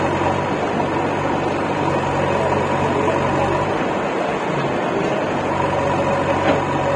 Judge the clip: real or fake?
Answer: real